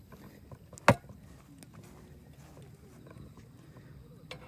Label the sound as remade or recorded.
recorded